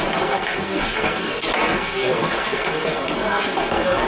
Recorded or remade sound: remade